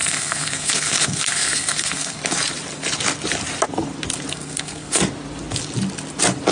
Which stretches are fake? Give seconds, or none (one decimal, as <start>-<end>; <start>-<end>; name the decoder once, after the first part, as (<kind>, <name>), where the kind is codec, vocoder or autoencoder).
0.0-2.2 (codec, SNAC); 4.3-5.0